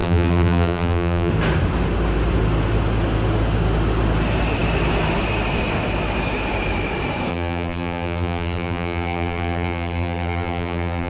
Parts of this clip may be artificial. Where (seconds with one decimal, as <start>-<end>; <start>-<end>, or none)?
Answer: 0.0-1.3; 7.3-11.1